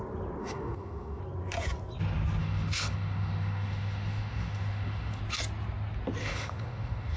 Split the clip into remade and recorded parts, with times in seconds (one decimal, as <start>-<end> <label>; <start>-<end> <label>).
0.0-0.4 recorded; 0.4-1.2 remade; 1.2-2.4 recorded; 2.4-5.2 remade; 5.2-6.2 recorded; 6.2-7.2 remade

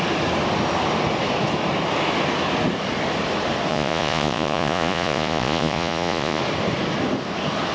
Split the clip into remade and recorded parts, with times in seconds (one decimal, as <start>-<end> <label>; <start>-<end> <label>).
0.0-3.7 recorded; 3.7-6.4 remade; 6.4-7.7 recorded

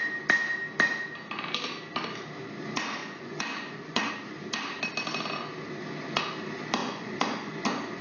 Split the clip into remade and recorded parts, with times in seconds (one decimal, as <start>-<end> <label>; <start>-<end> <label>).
0.0-3.0 recorded; 3.0-4.1 remade; 4.1-6.8 recorded; 6.8-8.0 remade

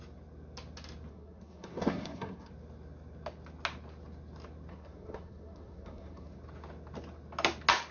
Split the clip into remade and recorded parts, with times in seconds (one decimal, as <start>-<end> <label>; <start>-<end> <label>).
0.0-1.1 recorded; 1.1-2.5 remade; 2.5-4.7 recorded; 4.7-6.4 remade; 6.4-7.9 recorded